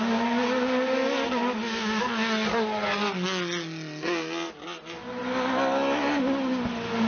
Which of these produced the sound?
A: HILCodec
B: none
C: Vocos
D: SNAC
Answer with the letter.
B